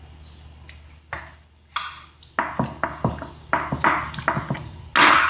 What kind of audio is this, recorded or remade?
recorded